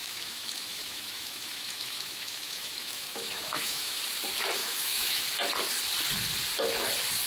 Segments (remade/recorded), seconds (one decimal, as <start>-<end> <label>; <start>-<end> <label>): 0.0-4.0 remade; 4.0-4.6 recorded; 4.6-5.2 remade; 5.2-7.3 recorded

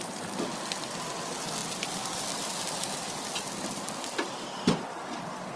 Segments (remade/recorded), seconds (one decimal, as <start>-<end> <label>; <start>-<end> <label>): 0.0-5.6 recorded

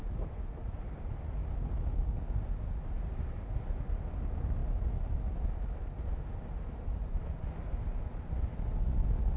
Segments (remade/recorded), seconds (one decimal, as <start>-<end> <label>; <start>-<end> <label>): 0.0-9.4 recorded

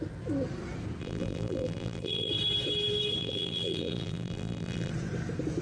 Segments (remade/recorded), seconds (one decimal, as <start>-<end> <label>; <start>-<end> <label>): 0.0-1.0 recorded; 1.0-2.3 remade; 2.3-3.2 recorded; 3.2-4.9 remade; 4.9-5.6 recorded

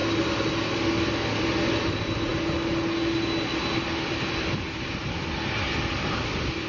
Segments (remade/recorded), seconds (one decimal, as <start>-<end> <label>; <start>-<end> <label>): 0.0-6.7 recorded